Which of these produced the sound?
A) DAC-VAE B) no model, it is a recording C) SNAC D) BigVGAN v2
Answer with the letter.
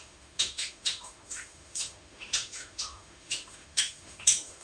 A